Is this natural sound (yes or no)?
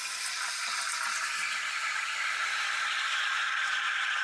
yes